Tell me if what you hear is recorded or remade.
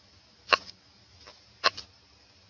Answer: recorded